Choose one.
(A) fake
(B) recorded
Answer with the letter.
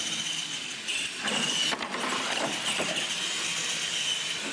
A